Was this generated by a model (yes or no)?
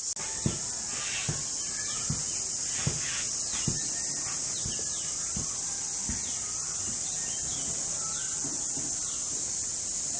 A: no